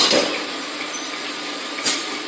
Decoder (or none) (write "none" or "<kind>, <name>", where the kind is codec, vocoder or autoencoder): none